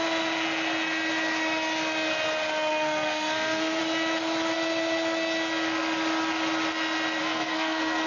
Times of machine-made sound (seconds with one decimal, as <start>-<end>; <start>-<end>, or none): 2.7-3.8; 7.2-8.1